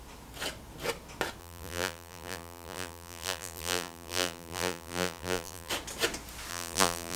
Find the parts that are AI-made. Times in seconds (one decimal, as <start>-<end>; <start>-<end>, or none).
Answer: 1.4-5.7; 6.5-7.2